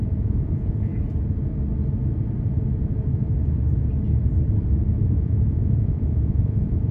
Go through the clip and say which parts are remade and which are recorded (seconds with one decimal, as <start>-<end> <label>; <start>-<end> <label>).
0.0-0.9 remade; 0.9-5.0 recorded; 5.0-6.9 remade